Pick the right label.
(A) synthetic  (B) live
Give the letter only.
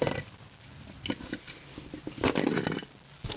B